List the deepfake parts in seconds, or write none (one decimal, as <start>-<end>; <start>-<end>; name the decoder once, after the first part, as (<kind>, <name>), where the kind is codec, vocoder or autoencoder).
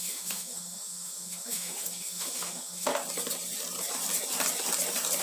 0.0-2.9 (autoencoder, DAC-VAE)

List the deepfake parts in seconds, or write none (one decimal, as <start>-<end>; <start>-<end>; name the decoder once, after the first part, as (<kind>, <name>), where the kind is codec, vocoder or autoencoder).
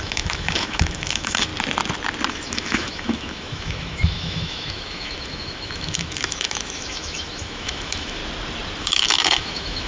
0.0-1.5 (autoencoder, DAC-VAE); 2.3-8.2; 8.8-9.9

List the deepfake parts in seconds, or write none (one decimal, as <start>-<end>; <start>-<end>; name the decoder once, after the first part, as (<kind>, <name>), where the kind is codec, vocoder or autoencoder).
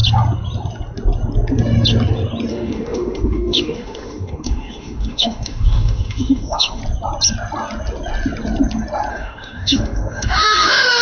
2.5-6.8 (autoencoder, DAC-VAE); 9.1-11.0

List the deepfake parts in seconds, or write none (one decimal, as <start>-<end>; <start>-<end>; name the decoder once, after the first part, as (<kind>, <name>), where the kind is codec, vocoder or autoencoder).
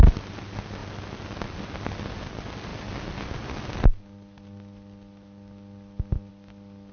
none